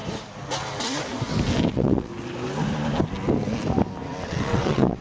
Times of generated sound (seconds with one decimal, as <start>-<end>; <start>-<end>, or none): 1.7-2.1; 4.3-5.0